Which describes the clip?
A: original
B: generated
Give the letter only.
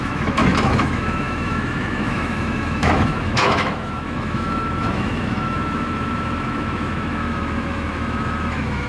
B